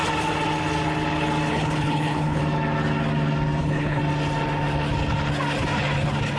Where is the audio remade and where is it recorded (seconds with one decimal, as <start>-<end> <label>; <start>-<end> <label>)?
0.0-1.5 recorded; 1.5-2.4 remade; 2.4-3.6 recorded; 3.6-4.0 remade; 4.0-6.4 recorded